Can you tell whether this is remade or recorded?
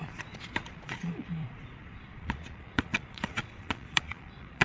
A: remade